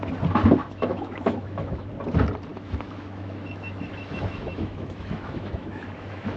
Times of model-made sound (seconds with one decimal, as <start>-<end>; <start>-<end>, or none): 0.6-1.9; 2.5-6.4